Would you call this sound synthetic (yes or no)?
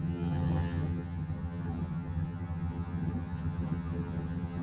yes